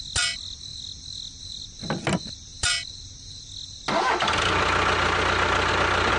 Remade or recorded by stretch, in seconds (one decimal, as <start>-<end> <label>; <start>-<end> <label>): 0.0-6.2 recorded